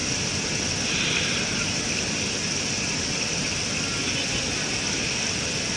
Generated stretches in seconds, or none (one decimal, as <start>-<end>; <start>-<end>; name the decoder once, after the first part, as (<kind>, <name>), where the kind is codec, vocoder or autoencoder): none